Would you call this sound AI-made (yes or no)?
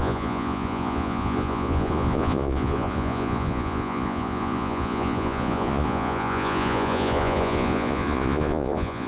yes